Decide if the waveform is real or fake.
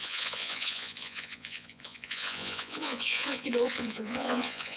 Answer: fake